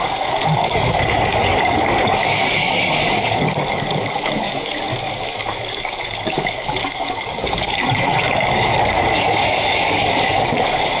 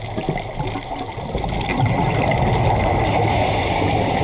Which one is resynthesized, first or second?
first